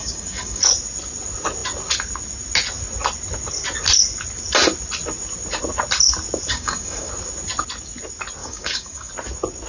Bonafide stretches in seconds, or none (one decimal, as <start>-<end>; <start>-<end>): 0.6-6.5; 7.1-8.4; 9.1-9.7